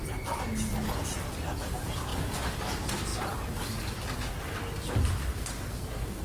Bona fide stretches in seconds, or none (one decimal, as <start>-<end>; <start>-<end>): 0.0-5.3